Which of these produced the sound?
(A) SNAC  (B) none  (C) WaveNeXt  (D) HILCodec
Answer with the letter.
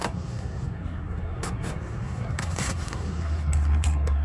A